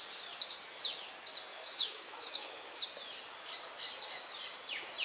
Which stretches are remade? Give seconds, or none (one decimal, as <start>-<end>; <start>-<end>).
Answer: 1.5-2.8